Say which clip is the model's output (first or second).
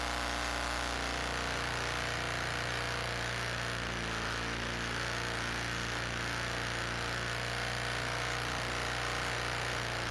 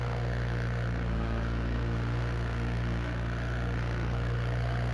second